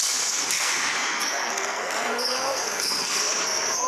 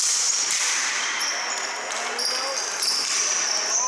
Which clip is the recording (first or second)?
second